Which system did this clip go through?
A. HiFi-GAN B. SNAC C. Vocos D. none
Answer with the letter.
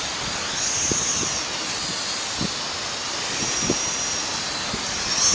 D